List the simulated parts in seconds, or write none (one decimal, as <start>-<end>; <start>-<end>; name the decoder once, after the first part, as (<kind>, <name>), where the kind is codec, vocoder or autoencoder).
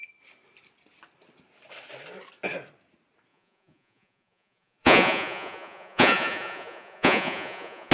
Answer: 3.3-7.9 (vocoder, Vocos)